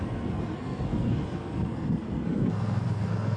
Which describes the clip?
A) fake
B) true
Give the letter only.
A